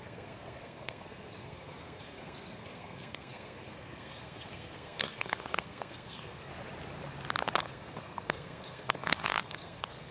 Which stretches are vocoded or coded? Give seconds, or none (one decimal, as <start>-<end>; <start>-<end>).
0.0-6.5; 7.6-10.1